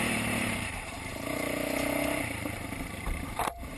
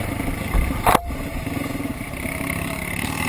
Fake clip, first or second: first